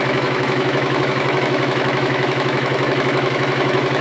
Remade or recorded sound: remade